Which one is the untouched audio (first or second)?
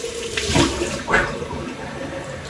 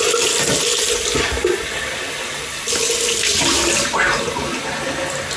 second